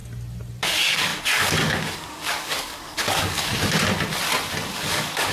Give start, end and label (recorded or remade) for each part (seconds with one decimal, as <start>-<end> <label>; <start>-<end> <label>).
0.0-0.6 recorded; 0.6-3.5 remade; 3.5-4.7 recorded; 4.7-5.3 remade